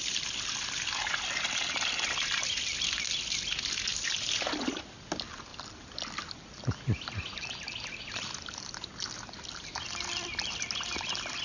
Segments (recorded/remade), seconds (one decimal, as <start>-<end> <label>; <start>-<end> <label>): 0.0-11.4 recorded